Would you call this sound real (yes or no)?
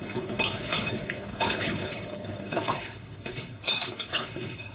no